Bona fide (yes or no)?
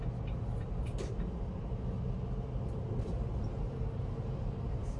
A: yes